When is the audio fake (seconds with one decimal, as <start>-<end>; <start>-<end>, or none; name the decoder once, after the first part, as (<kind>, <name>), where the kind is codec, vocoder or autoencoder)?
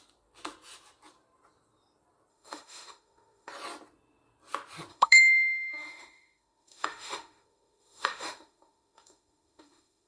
2.3-3.5 (autoencoder, DAC-VAE); 4.9-10.1